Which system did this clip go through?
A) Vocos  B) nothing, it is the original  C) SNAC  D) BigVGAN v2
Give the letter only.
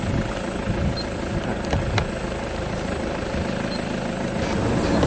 B